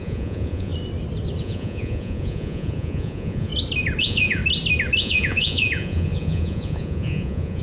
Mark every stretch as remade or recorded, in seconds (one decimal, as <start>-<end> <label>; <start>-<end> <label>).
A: 0.0-0.7 remade; 0.7-1.4 recorded; 1.4-3.5 remade; 3.5-4.0 recorded; 4.0-4.4 remade; 4.4-5.0 recorded; 5.0-7.6 remade